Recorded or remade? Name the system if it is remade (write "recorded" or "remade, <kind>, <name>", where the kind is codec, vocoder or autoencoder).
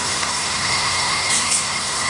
remade, codec, SNAC